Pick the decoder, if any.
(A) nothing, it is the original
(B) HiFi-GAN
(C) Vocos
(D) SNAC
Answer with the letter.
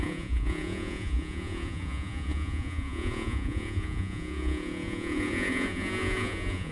C